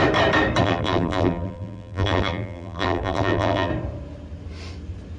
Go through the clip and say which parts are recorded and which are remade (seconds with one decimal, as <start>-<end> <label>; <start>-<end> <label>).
0.0-0.6 recorded; 0.6-3.7 remade; 3.7-5.2 recorded